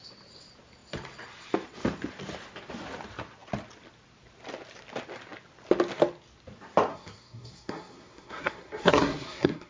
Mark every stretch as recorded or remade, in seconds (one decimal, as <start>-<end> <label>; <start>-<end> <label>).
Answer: 0.0-6.9 recorded; 6.9-9.7 remade